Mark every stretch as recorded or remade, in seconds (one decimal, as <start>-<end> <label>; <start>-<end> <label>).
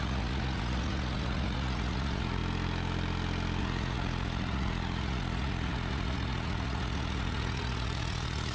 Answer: 0.0-2.4 remade; 2.4-3.6 recorded; 3.6-8.5 remade